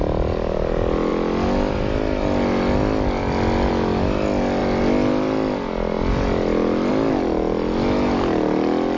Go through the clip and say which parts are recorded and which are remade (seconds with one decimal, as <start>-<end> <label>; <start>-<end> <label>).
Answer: 0.0-9.0 recorded